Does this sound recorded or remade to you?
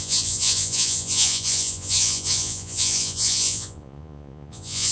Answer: remade